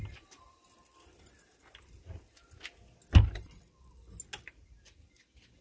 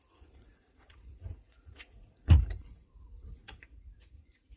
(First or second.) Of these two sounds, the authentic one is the first